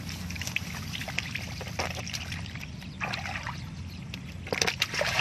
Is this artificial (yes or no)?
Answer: yes